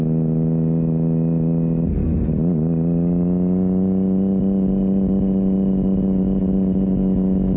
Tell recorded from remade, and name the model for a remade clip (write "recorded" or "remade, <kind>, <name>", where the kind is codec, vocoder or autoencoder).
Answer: recorded